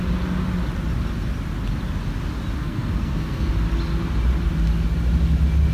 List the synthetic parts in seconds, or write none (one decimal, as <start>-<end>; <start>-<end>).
2.6-3.5